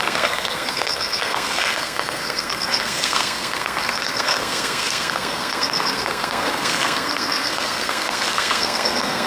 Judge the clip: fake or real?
fake